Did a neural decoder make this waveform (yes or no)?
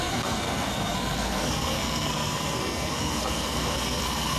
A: yes